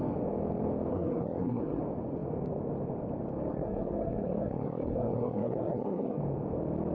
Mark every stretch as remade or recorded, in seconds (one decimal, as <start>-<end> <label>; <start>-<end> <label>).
0.0-0.9 recorded; 0.9-1.8 remade; 1.8-3.5 recorded; 3.5-6.2 remade; 6.2-6.9 recorded